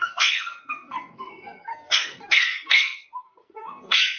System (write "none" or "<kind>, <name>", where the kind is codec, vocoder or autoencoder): codec, SNAC